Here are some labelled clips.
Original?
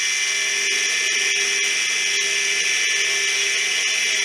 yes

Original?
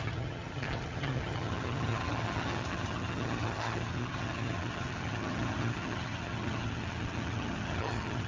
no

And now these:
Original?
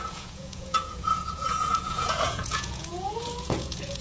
no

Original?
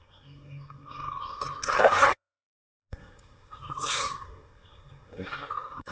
no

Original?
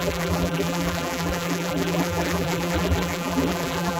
no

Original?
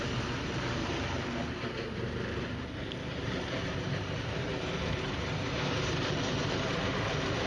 no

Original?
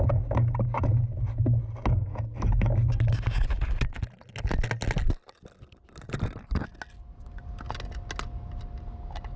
yes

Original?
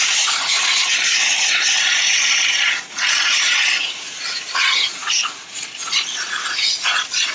no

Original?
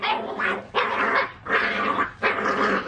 yes